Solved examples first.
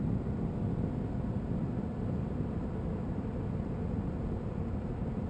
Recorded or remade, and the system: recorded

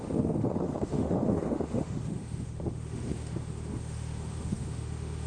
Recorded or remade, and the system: remade, autoencoder, DAC-VAE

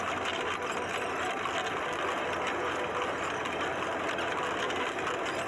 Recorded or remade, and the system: recorded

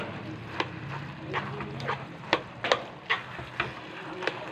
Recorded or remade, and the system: recorded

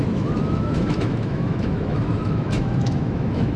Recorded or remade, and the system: remade, autoencoder, DAC-VAE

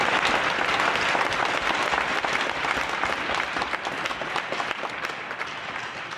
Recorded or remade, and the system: recorded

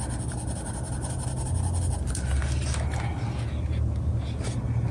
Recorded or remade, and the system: recorded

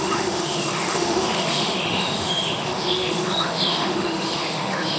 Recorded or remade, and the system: remade, autoencoder, DAC-VAE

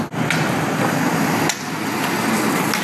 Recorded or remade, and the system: recorded